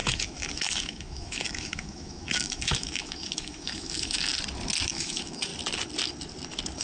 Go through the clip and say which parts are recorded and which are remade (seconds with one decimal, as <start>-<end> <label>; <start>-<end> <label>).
0.0-4.3 remade; 4.3-4.9 recorded; 4.9-5.5 remade; 5.5-6.8 recorded